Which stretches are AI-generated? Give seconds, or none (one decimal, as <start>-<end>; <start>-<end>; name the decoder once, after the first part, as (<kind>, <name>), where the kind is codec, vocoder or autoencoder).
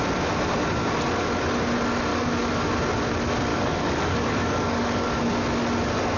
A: 2.1-2.7 (codec, DAC); 3.5-5.2